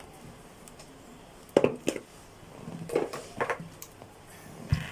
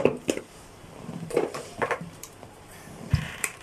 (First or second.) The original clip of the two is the first